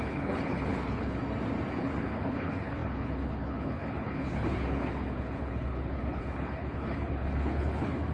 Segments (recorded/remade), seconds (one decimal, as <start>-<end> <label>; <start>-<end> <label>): 0.0-1.2 remade; 1.2-1.8 recorded; 1.8-8.1 remade